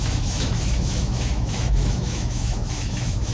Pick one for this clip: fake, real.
fake